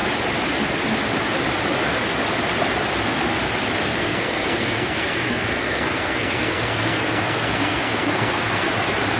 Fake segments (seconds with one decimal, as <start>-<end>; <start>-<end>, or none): 3.9-8.7